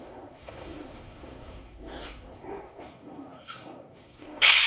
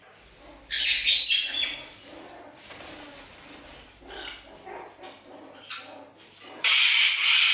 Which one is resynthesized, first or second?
first